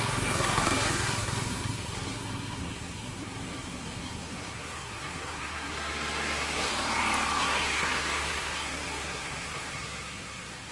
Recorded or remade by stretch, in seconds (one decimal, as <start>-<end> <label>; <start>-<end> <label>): 0.0-6.7 remade; 6.7-7.4 recorded; 7.4-10.7 remade